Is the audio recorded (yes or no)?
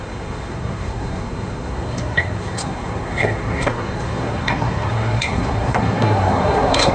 no